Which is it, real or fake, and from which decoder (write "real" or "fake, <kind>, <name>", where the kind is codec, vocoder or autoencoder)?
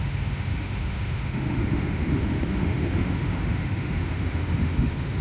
fake, autoencoder, DAC-VAE